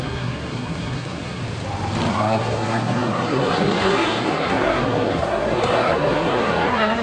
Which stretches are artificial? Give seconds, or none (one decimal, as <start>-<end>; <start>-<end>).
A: 0.0-1.4; 2.1-7.0